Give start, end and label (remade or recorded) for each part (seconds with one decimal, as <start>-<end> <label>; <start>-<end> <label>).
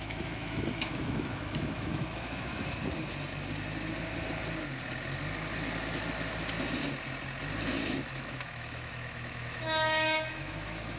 0.0-2.8 remade; 2.8-7.9 recorded; 7.9-11.0 remade